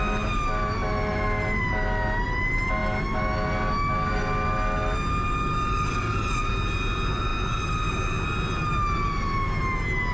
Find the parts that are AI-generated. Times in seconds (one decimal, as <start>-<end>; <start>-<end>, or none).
none